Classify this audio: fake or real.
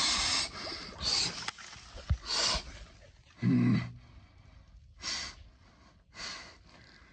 real